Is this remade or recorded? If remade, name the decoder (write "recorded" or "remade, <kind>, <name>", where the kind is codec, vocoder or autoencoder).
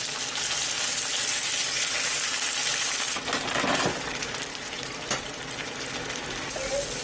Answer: recorded